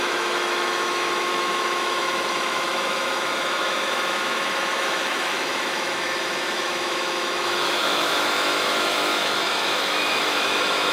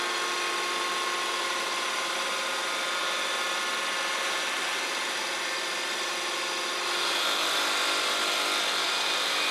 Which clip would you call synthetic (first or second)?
first